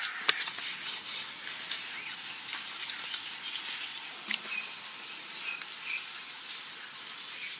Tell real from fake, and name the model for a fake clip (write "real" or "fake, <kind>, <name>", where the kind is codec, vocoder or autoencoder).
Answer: real